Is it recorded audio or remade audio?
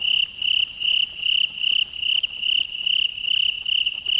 recorded